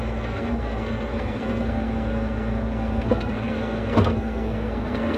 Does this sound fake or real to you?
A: fake